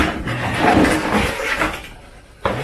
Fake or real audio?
real